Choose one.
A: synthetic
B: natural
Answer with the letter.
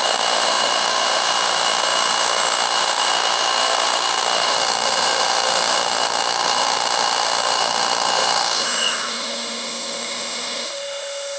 A